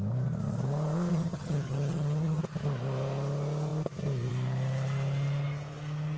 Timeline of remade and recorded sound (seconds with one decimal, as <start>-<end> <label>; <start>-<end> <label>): 0.0-1.1 recorded; 1.1-2.4 remade; 2.4-6.2 recorded